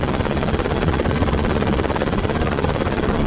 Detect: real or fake fake